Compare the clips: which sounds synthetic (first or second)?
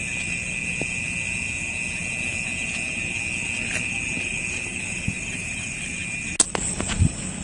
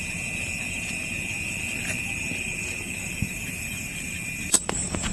second